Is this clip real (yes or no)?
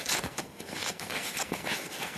no